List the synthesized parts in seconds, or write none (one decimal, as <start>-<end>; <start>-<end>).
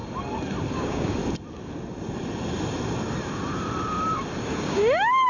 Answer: 0.7-1.2; 4.4-5.3